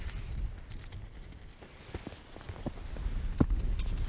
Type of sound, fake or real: real